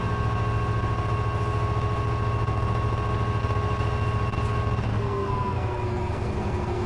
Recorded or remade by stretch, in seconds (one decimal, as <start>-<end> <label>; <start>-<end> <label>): 0.0-4.9 recorded; 4.9-6.9 remade